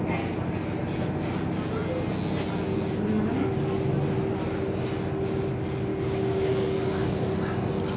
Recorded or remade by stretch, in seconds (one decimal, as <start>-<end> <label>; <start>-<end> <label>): 0.0-5.9 recorded; 5.9-7.3 remade; 7.3-8.0 recorded